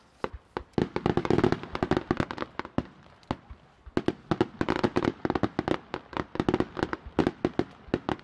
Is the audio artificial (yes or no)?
no